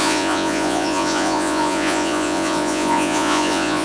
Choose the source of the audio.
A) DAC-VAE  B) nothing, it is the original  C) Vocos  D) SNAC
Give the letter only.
C